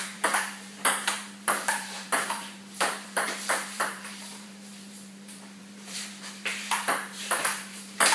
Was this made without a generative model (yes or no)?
no